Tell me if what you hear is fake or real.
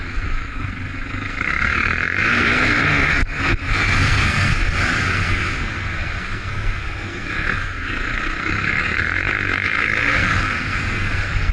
fake